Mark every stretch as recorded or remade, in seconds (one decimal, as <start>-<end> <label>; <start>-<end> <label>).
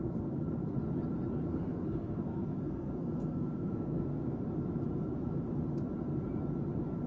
0.0-1.5 recorded; 1.5-4.4 remade; 4.4-7.1 recorded